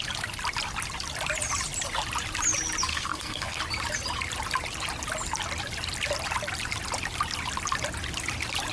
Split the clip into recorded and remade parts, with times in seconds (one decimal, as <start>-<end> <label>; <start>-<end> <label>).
0.0-2.9 recorded; 2.9-3.6 remade; 3.6-8.7 recorded